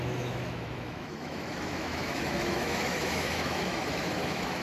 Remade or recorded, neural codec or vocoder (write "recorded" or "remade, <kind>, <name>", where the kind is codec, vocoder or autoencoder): remade, autoencoder, DAC-VAE